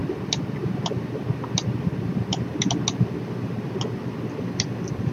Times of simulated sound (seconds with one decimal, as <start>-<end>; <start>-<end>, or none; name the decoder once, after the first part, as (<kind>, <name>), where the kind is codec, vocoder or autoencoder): none